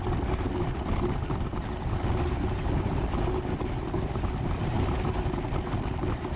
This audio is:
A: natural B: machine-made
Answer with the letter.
A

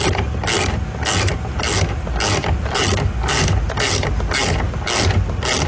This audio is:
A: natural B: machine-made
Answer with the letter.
A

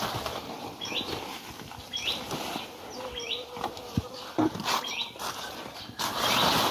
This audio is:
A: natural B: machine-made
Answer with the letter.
A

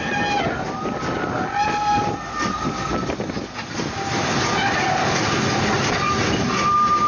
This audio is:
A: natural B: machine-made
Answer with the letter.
A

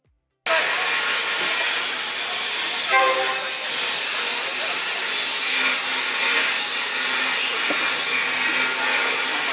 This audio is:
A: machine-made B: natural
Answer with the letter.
B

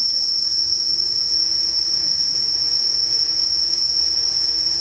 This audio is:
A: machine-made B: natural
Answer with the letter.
A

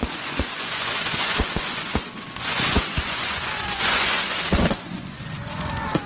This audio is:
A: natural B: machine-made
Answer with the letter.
B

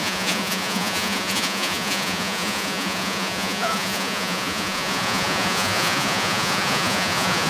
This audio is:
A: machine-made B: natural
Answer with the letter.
A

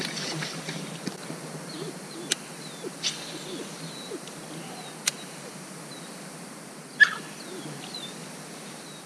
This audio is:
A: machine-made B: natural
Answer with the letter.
B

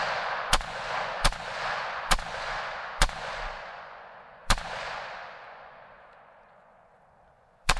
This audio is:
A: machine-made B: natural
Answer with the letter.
A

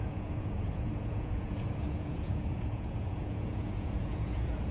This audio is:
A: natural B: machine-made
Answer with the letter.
B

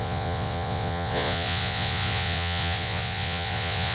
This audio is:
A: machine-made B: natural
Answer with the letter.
A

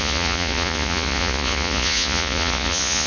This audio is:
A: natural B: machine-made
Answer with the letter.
B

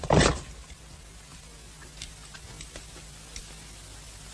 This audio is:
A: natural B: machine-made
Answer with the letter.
A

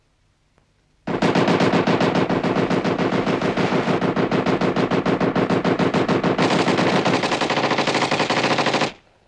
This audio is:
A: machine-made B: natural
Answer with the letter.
B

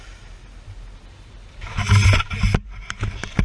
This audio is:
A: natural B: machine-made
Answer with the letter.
A